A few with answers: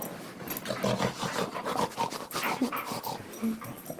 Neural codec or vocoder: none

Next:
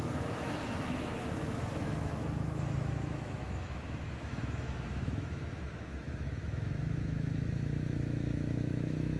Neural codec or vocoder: autoencoder, DAC-VAE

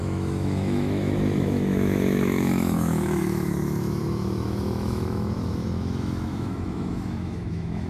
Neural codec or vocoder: autoencoder, DAC-VAE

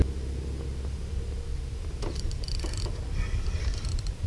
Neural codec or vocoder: none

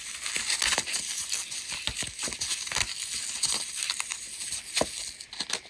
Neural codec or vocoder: none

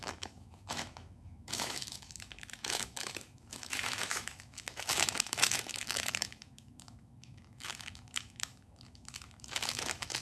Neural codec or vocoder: autoencoder, DAC-VAE